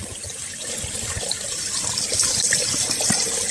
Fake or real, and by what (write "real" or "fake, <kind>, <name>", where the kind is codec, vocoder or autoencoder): real